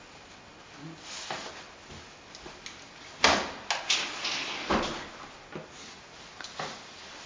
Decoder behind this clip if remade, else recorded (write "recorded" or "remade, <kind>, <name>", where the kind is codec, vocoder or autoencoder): recorded